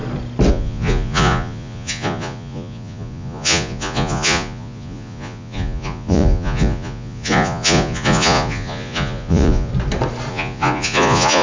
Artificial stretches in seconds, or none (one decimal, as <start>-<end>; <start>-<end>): 0.5-9.7; 10.3-11.4